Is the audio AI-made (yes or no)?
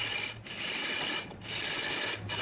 no